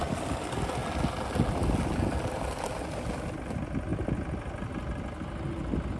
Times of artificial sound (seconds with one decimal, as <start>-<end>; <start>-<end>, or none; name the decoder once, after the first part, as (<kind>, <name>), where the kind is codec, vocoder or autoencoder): none

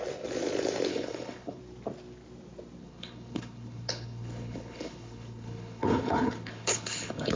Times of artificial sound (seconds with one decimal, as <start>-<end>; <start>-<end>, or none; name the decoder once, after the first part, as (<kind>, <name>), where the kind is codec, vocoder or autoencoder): 0.9-1.6 (codec, HILCodec); 2.8-7.4

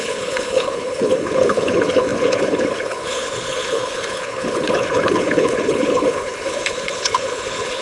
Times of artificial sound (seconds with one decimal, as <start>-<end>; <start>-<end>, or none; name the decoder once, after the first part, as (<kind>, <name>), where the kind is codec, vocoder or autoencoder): 0.0-7.8 (codec, HILCodec)